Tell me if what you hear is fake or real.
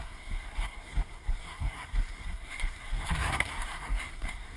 fake